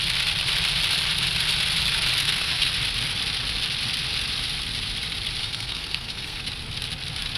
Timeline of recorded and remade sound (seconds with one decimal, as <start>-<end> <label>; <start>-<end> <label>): 0.0-2.2 recorded; 2.2-2.7 remade; 2.7-5.4 recorded; 5.4-6.4 remade; 6.4-7.4 recorded